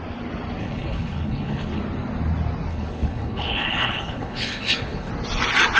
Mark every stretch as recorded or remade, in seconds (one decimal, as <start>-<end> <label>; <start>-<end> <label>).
0.0-0.6 recorded; 0.6-1.8 remade; 1.8-2.7 recorded; 2.7-5.1 remade; 5.1-5.8 recorded